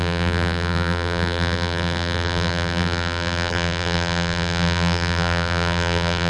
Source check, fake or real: fake